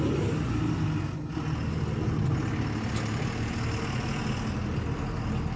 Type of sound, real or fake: real